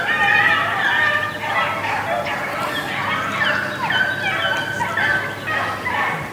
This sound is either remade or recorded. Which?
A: recorded